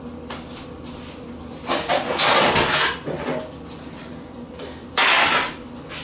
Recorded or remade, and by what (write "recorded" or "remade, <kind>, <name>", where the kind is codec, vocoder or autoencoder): recorded